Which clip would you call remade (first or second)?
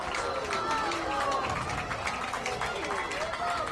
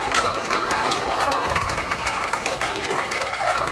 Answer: second